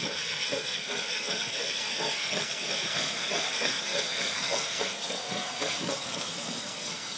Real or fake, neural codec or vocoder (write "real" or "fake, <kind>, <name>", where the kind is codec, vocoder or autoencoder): fake, codec, SNAC